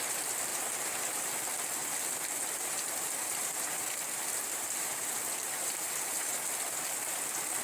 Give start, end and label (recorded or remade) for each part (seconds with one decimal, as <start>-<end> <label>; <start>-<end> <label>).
0.0-0.5 recorded; 0.5-1.3 remade; 1.3-1.8 recorded; 1.8-6.4 remade; 6.4-7.6 recorded